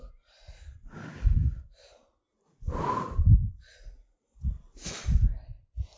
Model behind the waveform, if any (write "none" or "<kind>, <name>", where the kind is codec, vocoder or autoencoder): none